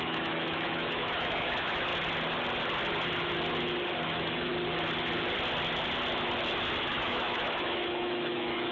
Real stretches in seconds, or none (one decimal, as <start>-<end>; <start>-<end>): 1.9-4.0; 4.5-6.9